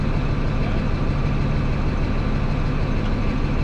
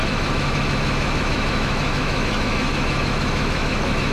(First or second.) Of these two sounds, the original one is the first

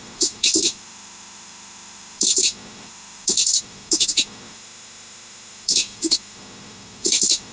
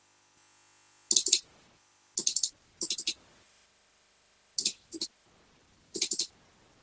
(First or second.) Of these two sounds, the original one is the second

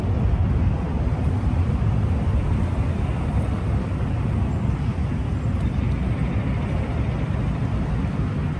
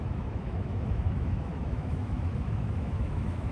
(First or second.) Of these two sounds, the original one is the first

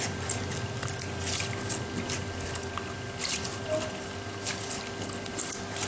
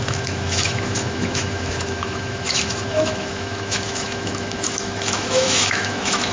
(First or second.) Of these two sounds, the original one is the first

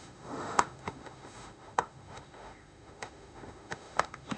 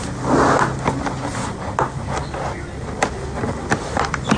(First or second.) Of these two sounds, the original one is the second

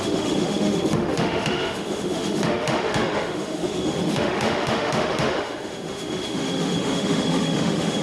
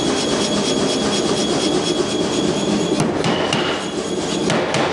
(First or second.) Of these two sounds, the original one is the second